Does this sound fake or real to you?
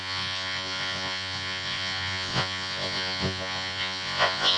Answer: fake